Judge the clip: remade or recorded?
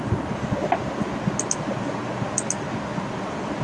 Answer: recorded